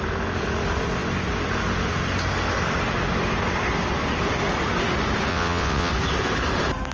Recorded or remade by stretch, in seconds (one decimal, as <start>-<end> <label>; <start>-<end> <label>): 0.0-5.3 recorded; 5.3-5.9 remade; 5.9-6.9 recorded